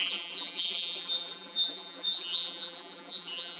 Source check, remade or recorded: remade